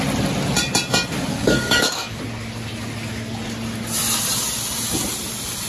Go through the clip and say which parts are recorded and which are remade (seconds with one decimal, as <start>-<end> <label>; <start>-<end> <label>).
0.0-1.3 recorded; 1.3-2.2 remade; 2.2-5.7 recorded